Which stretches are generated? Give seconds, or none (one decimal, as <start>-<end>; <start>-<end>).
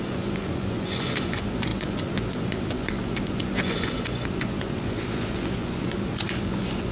0.0-6.9